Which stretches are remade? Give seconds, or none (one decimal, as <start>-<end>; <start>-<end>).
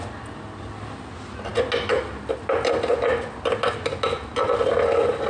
none